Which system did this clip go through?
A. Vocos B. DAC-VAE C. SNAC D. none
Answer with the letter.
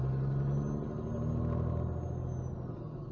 D